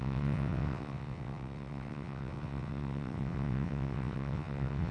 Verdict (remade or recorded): remade